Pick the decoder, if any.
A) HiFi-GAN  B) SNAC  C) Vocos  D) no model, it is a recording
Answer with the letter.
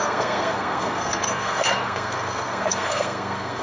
B